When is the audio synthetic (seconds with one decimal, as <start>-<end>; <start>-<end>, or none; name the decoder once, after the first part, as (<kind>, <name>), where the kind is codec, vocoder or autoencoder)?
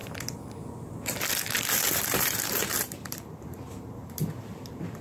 1.7-5.0 (vocoder, BigVGAN v2)